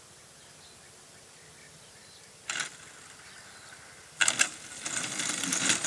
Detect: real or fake real